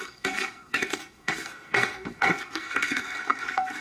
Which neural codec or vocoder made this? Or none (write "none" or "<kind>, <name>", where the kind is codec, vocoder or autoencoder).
codec, SNAC